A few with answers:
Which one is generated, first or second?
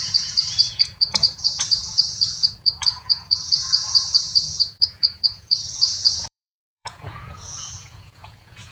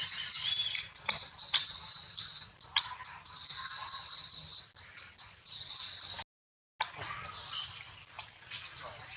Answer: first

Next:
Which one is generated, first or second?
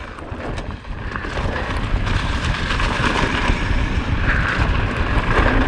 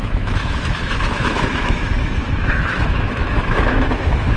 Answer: second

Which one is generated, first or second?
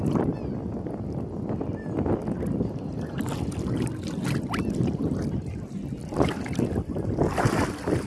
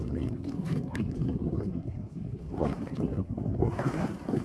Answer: second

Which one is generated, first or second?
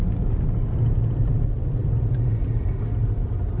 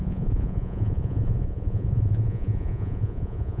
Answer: second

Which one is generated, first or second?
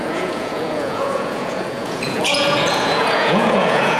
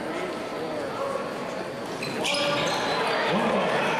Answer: first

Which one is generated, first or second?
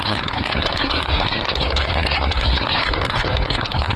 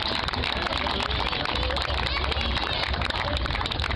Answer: first